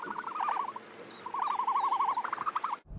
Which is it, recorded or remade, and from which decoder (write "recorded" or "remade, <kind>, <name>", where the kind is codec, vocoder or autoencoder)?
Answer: recorded